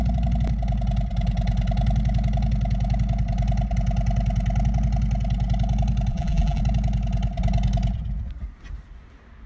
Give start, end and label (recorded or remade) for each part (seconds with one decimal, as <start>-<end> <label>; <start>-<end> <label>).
0.0-6.1 recorded; 6.1-6.6 remade; 6.6-9.5 recorded

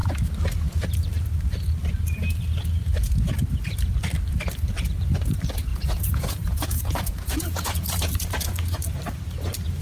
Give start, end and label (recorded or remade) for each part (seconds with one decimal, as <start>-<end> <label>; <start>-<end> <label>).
0.0-5.7 recorded; 5.7-8.1 remade; 8.1-9.8 recorded

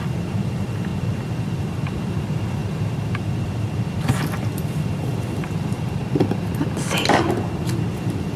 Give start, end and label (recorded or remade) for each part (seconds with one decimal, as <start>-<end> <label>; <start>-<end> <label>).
0.0-6.0 remade; 6.0-7.9 recorded; 7.9-8.4 remade

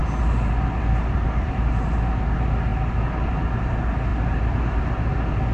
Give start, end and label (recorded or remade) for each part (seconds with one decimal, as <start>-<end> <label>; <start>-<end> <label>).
0.0-4.1 recorded; 4.1-4.8 remade; 4.8-5.5 recorded

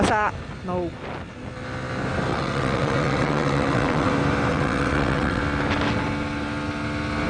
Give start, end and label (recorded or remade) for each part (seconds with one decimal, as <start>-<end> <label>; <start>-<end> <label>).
0.0-2.3 recorded; 2.3-4.1 remade; 4.1-4.5 recorded; 4.5-5.4 remade; 5.4-7.3 recorded

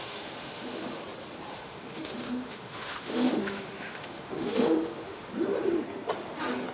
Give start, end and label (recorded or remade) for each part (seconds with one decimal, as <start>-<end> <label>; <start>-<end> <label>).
0.0-1.0 remade; 1.0-1.5 recorded; 1.5-5.3 remade; 5.3-6.7 recorded

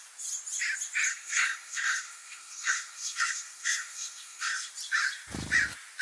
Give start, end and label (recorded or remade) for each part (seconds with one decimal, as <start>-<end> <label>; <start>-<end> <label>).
0.0-1.1 recorded; 1.1-4.7 remade; 4.7-6.0 recorded